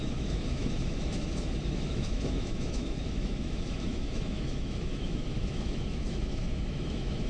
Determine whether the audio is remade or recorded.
remade